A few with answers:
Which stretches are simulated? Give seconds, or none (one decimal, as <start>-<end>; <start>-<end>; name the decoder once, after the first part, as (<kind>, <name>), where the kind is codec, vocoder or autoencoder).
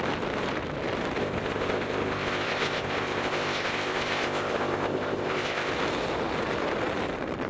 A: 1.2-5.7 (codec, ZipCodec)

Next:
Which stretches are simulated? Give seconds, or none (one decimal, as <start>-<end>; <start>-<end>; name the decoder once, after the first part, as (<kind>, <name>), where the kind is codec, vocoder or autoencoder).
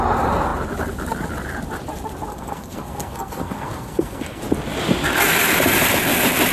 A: 2.3-4.4 (codec, SNAC)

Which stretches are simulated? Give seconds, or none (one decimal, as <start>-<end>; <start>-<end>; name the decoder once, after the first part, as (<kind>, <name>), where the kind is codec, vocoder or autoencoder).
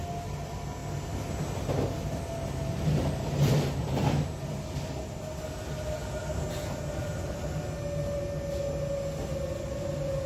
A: none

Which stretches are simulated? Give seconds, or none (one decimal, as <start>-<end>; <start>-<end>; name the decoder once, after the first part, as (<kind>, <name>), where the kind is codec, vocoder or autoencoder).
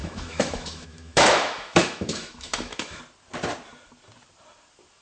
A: 0.0-3.0 (autoencoder, DAC-VAE)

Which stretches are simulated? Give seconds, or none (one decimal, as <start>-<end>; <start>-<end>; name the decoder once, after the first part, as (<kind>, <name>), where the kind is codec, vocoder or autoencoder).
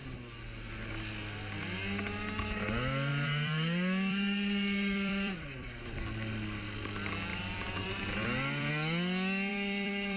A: 3.1-6.0 (vocoder, BigVGAN v2); 7.3-8.7; 9.5-10.2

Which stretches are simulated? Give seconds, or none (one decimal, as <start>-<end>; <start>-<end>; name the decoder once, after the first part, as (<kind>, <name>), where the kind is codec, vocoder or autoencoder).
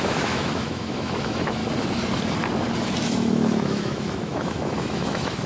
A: 0.0-1.6 (autoencoder, DAC-VAE); 3.0-5.5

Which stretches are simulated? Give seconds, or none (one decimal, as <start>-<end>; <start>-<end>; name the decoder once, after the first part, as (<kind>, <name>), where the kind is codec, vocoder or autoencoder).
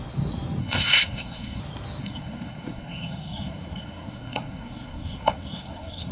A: 0.6-1.6 (codec, SNAC); 2.0-6.1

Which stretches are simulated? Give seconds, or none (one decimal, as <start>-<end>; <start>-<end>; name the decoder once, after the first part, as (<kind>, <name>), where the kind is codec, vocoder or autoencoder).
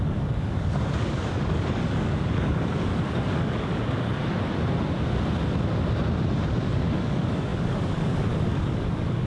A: 0.0-4.2 (codec, DAC); 6.6-9.3